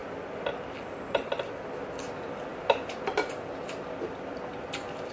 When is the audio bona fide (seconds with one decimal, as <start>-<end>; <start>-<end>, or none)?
0.0-5.1